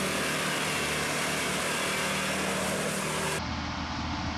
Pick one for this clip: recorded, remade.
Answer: recorded